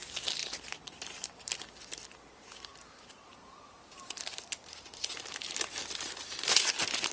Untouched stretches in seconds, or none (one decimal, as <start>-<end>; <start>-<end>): 0.0-0.4; 1.4-2.7; 4.2-7.1